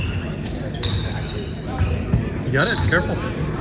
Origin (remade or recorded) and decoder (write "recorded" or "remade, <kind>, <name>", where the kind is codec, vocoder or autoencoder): remade, vocoder, BigVGAN v2